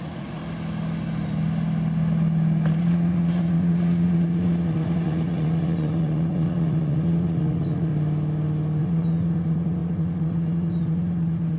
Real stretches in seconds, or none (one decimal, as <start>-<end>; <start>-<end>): 0.4-2.8; 7.9-8.8